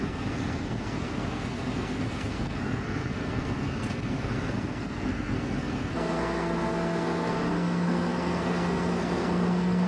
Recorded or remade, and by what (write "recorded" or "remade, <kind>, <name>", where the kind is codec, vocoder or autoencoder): remade, codec, SNAC